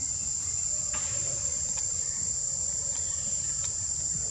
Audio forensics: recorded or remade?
remade